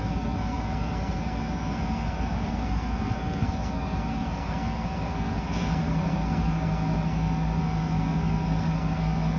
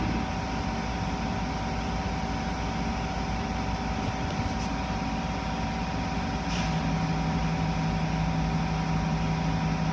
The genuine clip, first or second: second